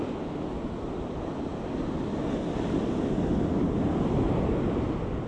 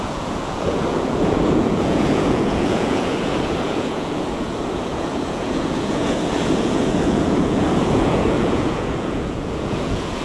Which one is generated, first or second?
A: second